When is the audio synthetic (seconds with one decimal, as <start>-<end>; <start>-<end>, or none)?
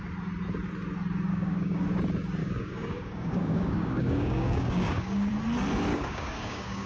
1.3-1.8; 2.4-5.3; 5.9-6.9